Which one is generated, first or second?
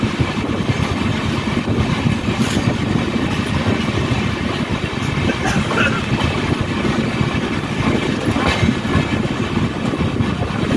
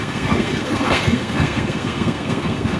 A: second